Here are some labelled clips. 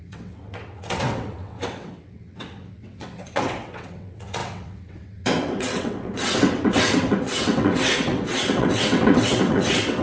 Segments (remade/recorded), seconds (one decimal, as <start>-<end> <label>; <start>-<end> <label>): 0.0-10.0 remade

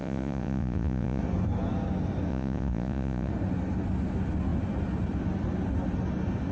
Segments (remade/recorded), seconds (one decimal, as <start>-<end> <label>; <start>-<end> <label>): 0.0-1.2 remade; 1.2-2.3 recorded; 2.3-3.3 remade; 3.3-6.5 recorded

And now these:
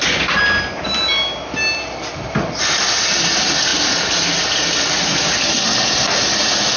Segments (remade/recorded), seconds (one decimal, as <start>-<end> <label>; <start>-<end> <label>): 0.0-6.8 recorded